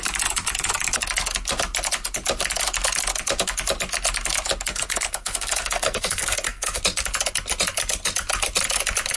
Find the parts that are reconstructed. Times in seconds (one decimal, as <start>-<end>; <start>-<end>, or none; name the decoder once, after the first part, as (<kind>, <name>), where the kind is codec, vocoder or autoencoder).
4.7-6.8 (codec, SNAC)